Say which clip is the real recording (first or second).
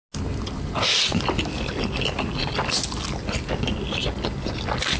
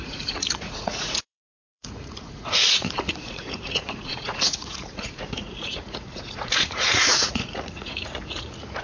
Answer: first